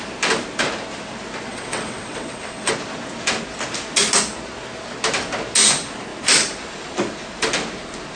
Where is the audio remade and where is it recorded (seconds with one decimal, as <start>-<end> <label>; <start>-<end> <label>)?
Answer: 0.0-1.5 recorded; 1.5-2.7 remade; 2.7-8.2 recorded